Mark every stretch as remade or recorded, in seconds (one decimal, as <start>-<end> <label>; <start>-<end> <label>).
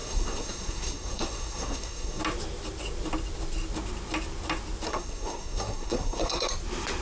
0.0-2.2 remade; 2.2-4.9 recorded; 4.9-6.5 remade; 6.5-7.0 recorded